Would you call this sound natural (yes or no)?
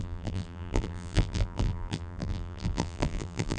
no